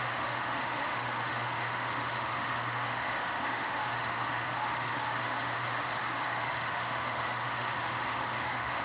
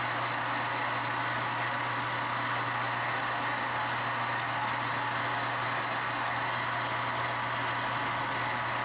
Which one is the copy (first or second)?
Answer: first